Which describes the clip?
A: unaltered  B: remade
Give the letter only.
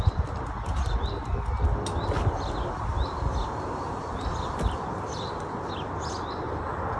A